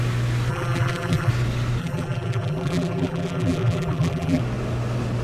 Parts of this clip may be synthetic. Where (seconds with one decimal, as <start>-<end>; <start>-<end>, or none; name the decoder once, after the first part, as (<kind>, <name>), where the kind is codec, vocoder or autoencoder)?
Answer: 0.5-1.3 (vocoder, BigVGAN v2); 1.8-4.4